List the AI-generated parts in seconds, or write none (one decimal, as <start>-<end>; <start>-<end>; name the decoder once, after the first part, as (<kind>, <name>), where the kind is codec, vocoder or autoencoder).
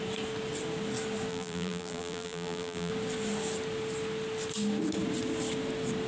1.3-2.9 (vocoder, BigVGAN v2)